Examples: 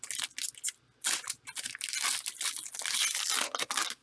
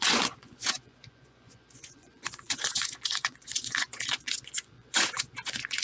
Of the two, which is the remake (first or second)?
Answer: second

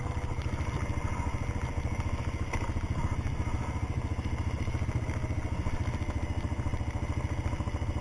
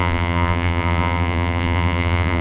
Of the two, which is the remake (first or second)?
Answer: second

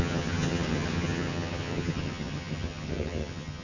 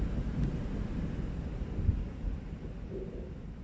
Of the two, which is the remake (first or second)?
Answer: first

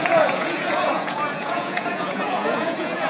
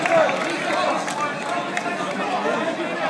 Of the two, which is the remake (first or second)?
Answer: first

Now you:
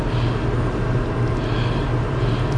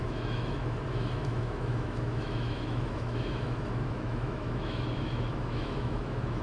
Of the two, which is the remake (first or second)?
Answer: second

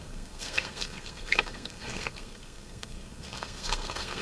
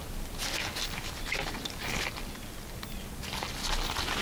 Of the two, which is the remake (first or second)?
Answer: first